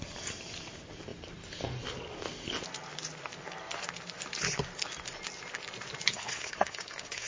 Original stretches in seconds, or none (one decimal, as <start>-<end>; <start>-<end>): 0.0-6.1

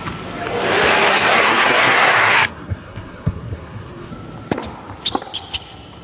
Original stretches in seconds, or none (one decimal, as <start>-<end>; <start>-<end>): 0.0-1.1; 4.1-6.0

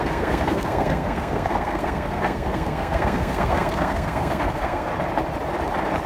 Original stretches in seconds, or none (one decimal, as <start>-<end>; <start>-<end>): 4.9-6.1

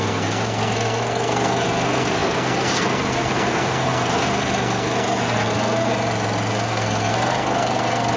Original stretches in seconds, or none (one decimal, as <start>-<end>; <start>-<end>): 5.9-6.5

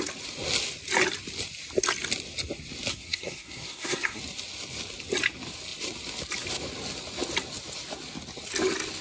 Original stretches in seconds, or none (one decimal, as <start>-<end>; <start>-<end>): 0.0-2.9; 4.2-9.0